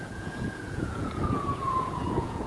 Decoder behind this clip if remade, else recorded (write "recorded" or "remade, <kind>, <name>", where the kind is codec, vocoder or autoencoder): remade, vocoder, Vocos